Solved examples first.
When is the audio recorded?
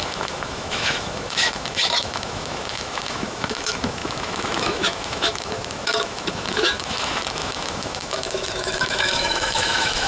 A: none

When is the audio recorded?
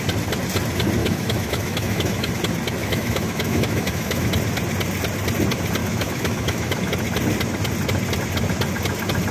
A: 0.0-1.0; 2.3-2.8; 4.3-5.8; 6.8-9.3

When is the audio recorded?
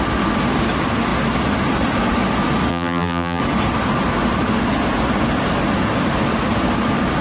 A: 0.0-2.7; 3.4-7.2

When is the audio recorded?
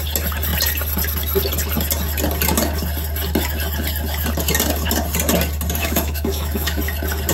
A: 0.0-5.8; 6.8-7.3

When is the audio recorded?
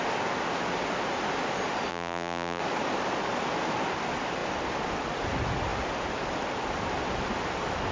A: 0.0-1.9; 2.6-7.9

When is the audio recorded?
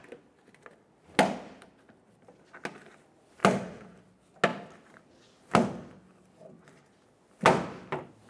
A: 0.0-8.3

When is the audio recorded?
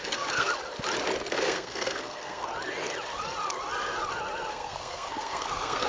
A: 0.5-1.3; 2.5-4.5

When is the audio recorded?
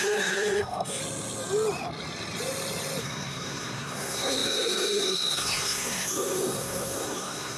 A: 1.0-3.0